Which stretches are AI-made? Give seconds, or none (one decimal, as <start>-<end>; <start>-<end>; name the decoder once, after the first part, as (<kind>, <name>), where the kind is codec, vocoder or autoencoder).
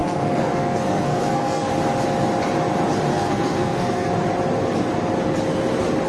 0.0-1.7 (codec, SNAC); 3.1-4.1